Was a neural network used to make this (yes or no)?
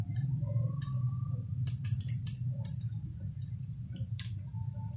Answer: yes